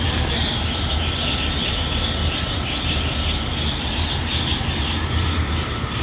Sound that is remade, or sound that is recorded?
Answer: recorded